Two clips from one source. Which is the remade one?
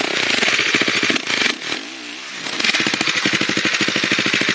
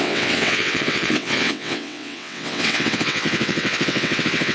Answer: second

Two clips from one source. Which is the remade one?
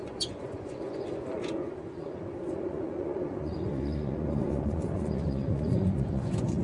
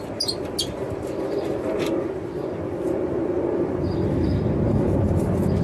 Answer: first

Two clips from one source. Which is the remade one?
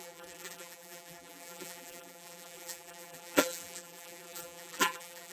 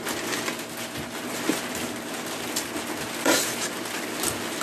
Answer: first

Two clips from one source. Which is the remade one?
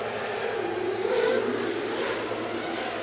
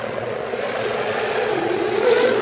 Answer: second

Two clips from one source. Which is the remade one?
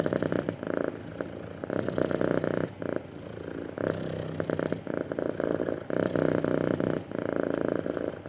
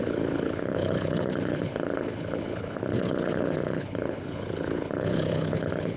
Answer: second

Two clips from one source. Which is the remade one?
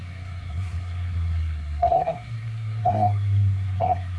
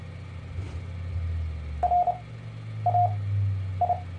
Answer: first